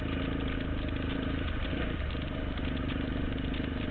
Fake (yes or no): no